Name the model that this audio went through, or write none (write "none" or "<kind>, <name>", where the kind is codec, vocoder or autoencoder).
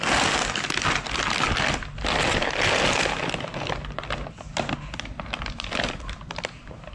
none